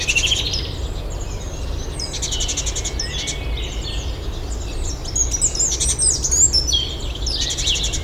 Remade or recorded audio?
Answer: recorded